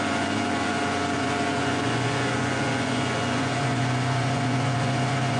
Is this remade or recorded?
remade